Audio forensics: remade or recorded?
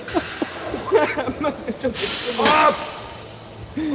recorded